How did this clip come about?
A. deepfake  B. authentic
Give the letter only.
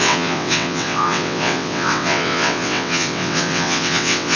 A